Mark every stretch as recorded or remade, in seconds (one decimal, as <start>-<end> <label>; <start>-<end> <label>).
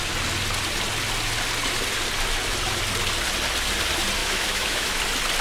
0.0-4.2 recorded; 4.2-5.0 remade; 5.0-5.4 recorded